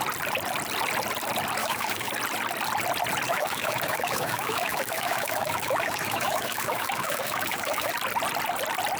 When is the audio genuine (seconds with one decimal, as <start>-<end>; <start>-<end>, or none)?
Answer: 0.0-1.6; 2.1-3.3; 7.9-9.0